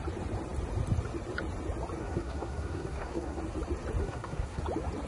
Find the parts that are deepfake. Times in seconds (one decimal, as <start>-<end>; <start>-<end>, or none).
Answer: 2.0-3.4; 4.0-4.6